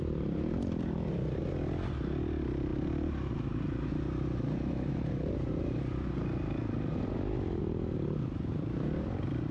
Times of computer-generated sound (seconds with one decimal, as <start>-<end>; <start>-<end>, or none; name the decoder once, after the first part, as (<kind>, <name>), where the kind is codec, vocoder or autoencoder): none